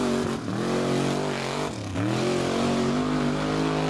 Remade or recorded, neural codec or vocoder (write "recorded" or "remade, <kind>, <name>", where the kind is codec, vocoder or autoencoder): recorded